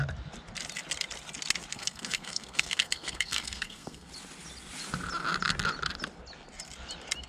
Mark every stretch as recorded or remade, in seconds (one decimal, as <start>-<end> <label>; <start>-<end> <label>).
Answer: 0.0-1.7 recorded; 1.7-4.1 remade; 4.1-7.3 recorded